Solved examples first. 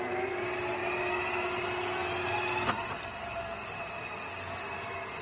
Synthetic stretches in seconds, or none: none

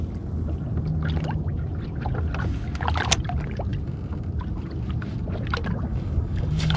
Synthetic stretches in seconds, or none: 5.9-6.8 (codec, DAC)

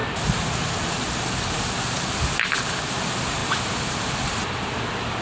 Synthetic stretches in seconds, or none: none

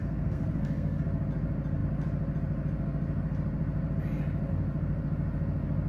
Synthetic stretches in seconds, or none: 0.0-1.0 (codec, SNAC)

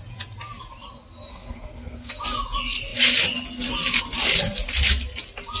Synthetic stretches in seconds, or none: 1.3-2.1 (codec, SNAC)